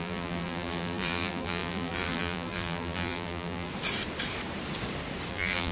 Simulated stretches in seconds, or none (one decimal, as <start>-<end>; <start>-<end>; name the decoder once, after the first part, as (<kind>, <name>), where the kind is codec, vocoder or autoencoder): 0.0-3.7 (vocoder, BigVGAN v2); 5.3-5.7